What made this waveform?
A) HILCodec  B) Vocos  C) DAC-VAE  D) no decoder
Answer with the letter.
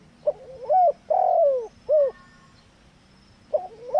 D